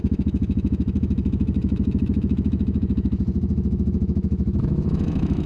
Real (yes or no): no